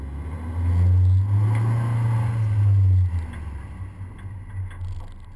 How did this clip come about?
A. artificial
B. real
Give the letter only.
B